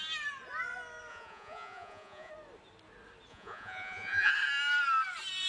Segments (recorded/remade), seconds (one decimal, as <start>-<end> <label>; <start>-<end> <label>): 0.0-1.1 recorded; 1.1-2.3 remade; 2.3-3.3 recorded; 3.3-4.3 remade; 4.3-5.5 recorded